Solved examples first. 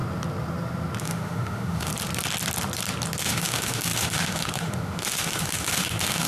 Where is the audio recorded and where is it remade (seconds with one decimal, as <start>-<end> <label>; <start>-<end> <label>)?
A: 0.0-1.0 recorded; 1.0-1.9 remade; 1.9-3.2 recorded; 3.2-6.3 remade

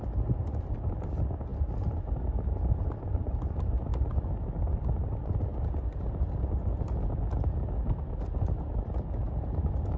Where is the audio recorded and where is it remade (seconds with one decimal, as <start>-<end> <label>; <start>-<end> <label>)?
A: 0.0-10.0 recorded

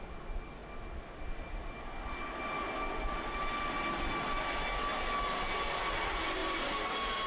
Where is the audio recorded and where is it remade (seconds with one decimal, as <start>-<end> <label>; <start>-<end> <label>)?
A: 0.0-7.3 recorded

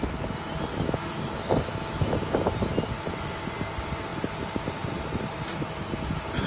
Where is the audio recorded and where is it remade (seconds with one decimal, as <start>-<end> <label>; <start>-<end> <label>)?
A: 0.0-0.7 recorded; 0.7-2.3 remade; 2.3-6.5 recorded

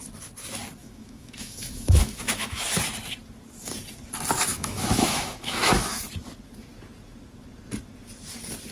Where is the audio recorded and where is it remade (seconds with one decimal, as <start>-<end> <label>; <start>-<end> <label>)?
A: 0.0-0.8 recorded; 0.8-2.8 remade; 2.8-4.5 recorded; 4.5-6.0 remade; 6.0-8.7 recorded